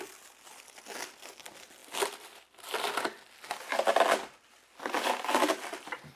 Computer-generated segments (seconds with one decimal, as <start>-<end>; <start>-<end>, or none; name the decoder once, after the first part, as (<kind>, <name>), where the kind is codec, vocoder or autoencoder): none